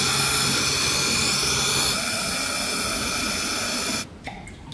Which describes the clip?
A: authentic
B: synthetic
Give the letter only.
A